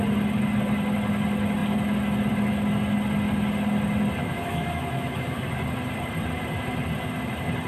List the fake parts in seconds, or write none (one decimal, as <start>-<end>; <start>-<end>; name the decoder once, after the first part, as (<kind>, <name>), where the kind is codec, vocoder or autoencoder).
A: 4.2-5.5 (autoencoder, DAC-VAE)